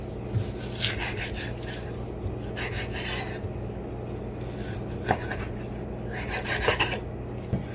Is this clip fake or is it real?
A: real